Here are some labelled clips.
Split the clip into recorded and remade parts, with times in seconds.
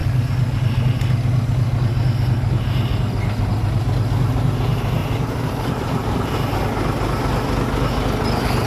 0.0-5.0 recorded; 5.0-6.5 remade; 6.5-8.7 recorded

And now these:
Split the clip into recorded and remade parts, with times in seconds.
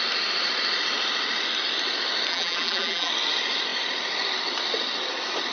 0.0-2.3 recorded; 2.3-3.1 remade; 3.1-5.5 recorded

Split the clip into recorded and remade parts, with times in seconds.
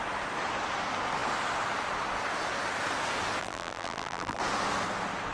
0.0-3.4 recorded; 3.4-4.4 remade; 4.4-5.3 recorded